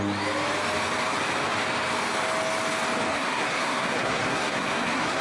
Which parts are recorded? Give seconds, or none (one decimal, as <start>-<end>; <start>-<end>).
0.0-3.1